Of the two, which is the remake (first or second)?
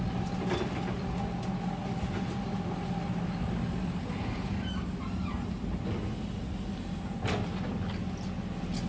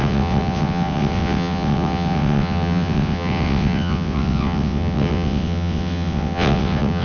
second